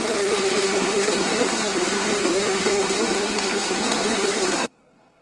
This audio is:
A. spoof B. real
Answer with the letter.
A